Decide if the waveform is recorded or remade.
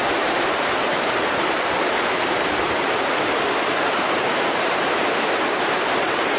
remade